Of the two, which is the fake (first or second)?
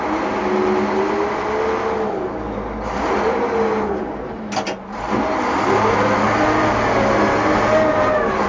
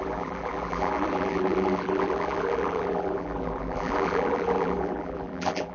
second